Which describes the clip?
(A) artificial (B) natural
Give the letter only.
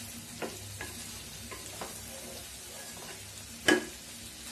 B